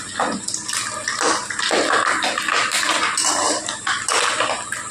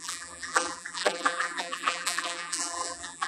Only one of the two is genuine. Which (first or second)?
first